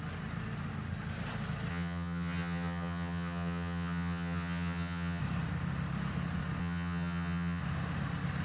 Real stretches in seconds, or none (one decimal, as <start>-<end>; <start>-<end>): 0.0-1.7; 5.2-6.6; 7.6-8.4